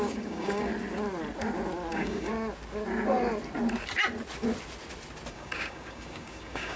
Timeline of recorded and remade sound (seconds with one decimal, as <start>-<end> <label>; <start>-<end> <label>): 0.0-0.7 remade; 0.7-1.9 recorded; 1.9-2.3 remade; 2.3-5.3 recorded; 5.3-6.8 remade

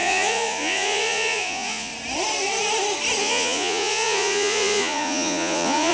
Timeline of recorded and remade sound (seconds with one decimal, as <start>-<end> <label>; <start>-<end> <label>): 0.0-1.9 remade; 1.9-3.2 recorded; 3.2-5.9 remade